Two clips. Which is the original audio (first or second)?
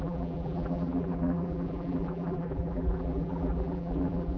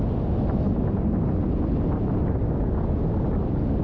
second